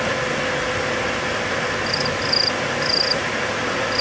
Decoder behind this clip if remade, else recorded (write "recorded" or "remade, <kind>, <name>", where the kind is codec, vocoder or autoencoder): recorded